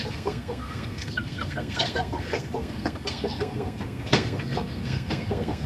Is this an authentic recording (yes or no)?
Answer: no